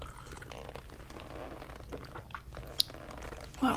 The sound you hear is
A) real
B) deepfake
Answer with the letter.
A